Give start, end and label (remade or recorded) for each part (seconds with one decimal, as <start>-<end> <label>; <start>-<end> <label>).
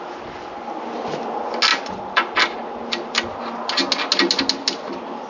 0.0-5.3 recorded